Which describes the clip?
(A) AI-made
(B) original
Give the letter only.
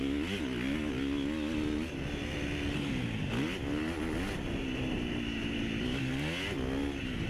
B